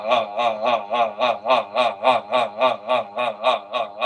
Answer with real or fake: real